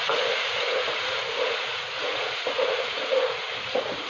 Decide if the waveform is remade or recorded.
remade